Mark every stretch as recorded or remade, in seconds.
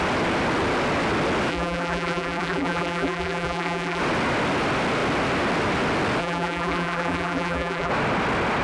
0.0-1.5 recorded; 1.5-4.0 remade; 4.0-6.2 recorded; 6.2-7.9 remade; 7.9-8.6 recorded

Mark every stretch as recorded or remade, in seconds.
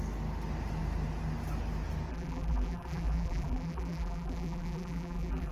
0.0-2.1 recorded; 2.1-5.5 remade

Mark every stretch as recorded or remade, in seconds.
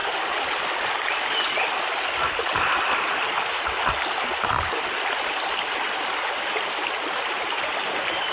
0.0-8.3 remade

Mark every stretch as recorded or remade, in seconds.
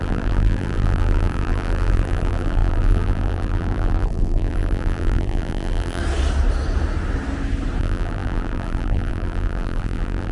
0.0-6.0 remade; 6.0-7.8 recorded; 7.8-10.3 remade